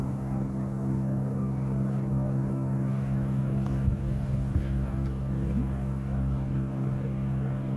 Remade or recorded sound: remade